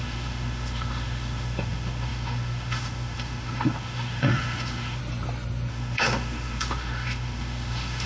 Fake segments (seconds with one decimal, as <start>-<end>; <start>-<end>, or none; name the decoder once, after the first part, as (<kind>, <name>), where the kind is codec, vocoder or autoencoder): 0.0-5.0 (autoencoder, DAC-VAE); 5.7-8.1